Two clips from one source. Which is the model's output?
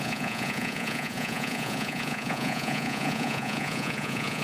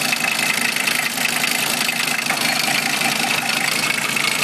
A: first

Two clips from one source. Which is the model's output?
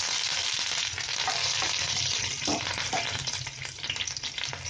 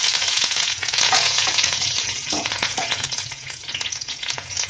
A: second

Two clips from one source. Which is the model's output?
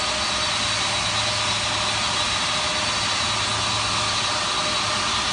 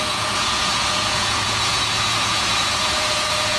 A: second